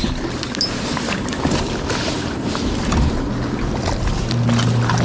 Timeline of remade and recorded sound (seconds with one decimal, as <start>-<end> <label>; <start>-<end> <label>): 0.0-5.0 recorded